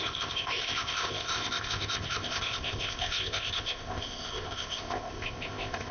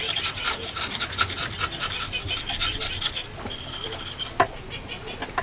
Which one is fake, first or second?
first